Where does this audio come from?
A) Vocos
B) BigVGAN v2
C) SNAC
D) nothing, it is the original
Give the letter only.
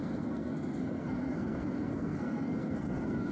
C